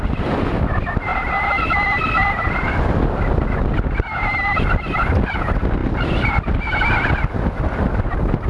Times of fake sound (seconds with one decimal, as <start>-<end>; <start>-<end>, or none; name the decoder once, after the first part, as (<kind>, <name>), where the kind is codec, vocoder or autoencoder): 1.1-1.7 (vocoder, BigVGAN v2)